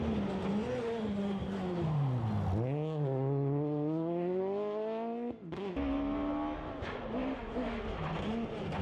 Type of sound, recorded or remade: recorded